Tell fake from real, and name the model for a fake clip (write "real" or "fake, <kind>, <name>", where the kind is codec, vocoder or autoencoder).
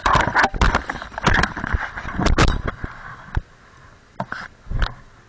real